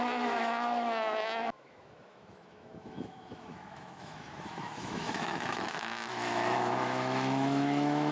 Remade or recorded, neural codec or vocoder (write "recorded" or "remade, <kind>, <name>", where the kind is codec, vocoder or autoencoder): remade, autoencoder, DAC-VAE